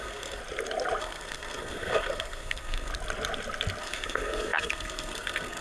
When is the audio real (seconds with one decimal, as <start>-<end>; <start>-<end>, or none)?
0.4-1.0; 2.9-3.8